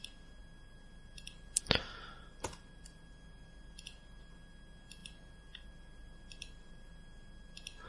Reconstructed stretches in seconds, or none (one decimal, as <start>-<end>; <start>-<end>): 0.4-3.8; 5.0-6.9